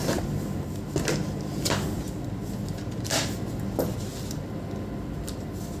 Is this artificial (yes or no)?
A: no